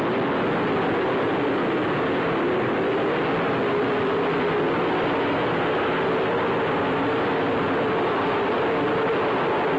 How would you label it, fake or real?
real